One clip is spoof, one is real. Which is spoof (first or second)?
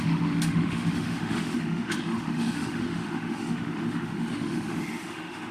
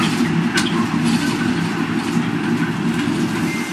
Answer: first